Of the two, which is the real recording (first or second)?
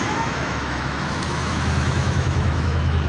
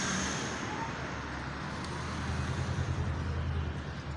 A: second